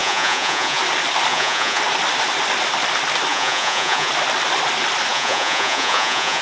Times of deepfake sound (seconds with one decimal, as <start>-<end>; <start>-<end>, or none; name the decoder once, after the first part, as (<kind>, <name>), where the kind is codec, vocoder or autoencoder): 0.0-0.8 (vocoder, Vocos); 1.3-1.8; 3.3-4.1; 5.1-6.4